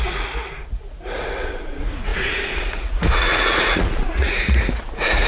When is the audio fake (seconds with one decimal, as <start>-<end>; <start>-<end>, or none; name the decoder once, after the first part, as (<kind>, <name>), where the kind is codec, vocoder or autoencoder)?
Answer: 0.0-5.3 (vocoder, Vocos)